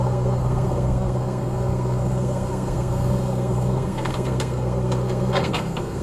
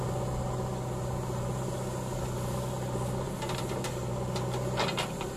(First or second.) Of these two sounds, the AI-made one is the first